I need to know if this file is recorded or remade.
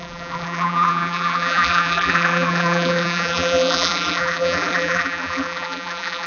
remade